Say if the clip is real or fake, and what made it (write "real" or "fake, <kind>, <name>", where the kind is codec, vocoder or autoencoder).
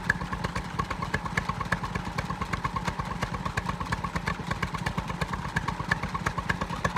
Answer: real